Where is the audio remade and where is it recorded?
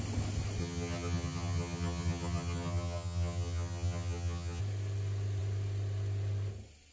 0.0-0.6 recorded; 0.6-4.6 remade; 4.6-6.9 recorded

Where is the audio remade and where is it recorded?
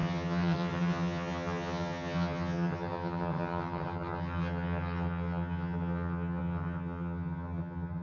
0.0-8.0 remade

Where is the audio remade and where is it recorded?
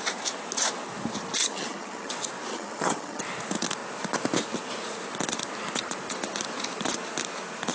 0.0-1.4 recorded; 1.4-2.1 remade; 2.1-2.5 recorded; 2.5-3.2 remade; 3.2-7.7 recorded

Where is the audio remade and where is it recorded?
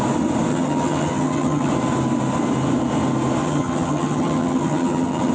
0.0-0.5 recorded; 0.5-1.7 remade; 1.7-3.4 recorded; 3.4-5.3 remade